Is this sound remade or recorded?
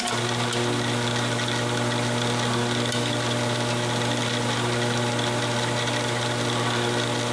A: recorded